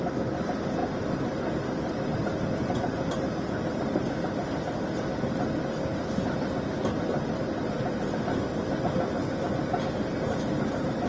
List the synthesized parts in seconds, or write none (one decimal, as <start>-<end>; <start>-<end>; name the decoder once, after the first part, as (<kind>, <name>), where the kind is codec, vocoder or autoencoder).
0.8-3.1 (vocoder, BigVGAN v2)